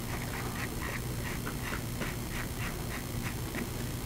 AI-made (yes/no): no